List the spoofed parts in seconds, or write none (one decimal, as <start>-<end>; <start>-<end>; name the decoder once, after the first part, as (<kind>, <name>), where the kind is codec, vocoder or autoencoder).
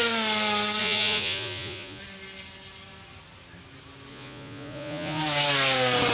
0.8-2.0 (vocoder, Vocos); 4.1-5.2